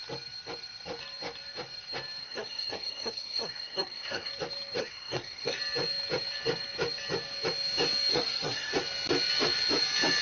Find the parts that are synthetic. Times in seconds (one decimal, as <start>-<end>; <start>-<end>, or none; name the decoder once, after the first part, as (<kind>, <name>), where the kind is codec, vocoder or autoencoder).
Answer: 2.2-4.3 (codec, SNAC); 4.8-5.6; 8.1-8.7